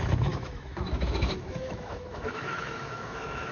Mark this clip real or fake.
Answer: fake